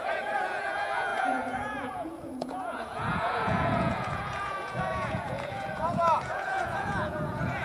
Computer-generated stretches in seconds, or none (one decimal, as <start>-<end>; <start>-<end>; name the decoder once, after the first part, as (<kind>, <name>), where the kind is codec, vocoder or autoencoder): 0.0-7.6 (vocoder, Vocos)